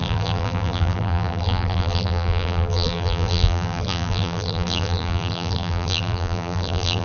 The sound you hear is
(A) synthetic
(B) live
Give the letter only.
A